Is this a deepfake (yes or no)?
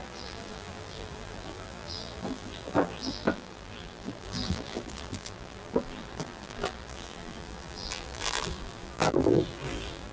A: yes